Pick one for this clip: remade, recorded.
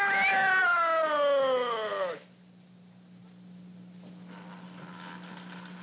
recorded